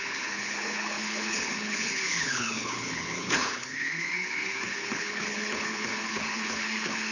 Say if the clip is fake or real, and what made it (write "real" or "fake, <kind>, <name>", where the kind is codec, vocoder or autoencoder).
fake, codec, HILCodec